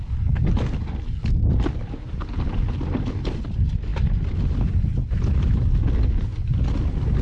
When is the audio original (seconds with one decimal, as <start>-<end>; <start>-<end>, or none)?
0.0-7.2